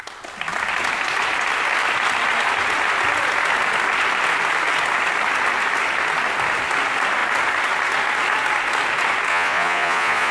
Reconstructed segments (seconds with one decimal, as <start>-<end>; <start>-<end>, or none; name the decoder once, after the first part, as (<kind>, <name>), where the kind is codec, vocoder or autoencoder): 9.3-10.3 (vocoder, Vocos)